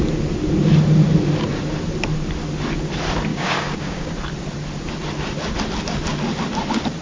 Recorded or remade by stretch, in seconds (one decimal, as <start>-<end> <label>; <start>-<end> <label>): 0.0-3.3 recorded; 3.3-4.1 remade; 4.1-7.0 recorded